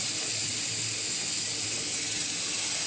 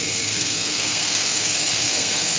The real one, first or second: first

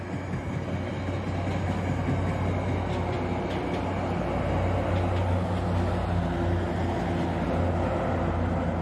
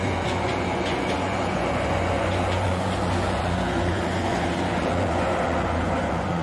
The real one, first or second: first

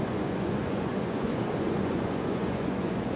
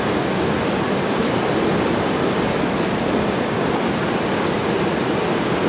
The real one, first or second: second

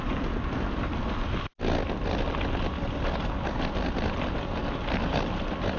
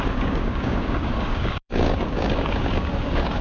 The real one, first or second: first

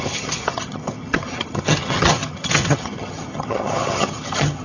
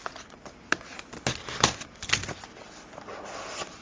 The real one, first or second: second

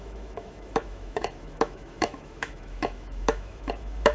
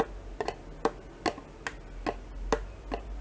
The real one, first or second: second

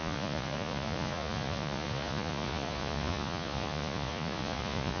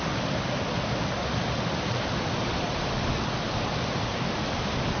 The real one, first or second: second